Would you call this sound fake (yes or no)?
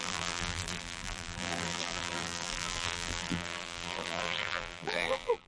yes